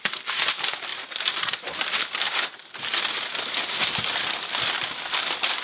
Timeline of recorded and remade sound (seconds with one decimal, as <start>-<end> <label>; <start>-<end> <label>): 0.0-5.6 recorded